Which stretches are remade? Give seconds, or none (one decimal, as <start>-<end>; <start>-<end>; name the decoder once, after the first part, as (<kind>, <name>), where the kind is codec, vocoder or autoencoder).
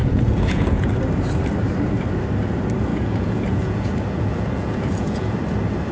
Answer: 0.0-0.9 (vocoder, Vocos); 2.9-5.4